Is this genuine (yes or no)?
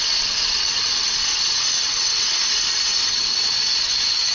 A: no